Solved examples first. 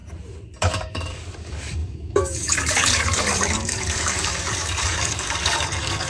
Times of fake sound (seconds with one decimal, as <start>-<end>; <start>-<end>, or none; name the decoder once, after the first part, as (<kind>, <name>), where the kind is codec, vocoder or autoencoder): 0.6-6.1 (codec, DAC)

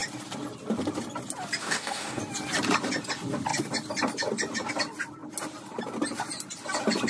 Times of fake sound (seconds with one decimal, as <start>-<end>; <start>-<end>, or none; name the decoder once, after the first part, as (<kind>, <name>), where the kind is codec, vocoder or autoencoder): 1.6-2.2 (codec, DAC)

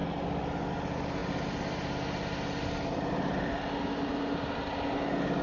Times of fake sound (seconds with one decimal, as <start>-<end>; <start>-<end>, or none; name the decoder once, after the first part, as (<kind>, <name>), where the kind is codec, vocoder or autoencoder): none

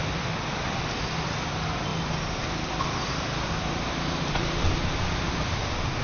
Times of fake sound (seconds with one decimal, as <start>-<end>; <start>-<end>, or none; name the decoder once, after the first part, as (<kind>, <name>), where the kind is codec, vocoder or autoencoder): none

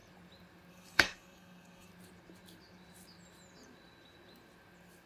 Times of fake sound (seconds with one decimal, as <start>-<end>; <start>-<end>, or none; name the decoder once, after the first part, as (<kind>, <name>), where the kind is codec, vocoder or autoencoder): 0.7-1.9 (codec, DAC)

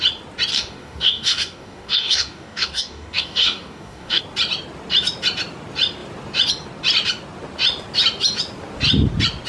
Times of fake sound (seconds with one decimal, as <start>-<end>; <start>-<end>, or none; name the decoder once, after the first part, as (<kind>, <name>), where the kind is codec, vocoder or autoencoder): 0.5-4.2 (codec, DAC)

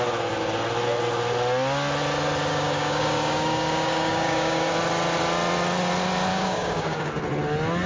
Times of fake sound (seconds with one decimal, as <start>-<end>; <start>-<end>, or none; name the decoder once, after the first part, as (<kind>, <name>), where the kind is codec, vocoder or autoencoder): 2.5-4.7 (codec, DAC); 6.3-7.2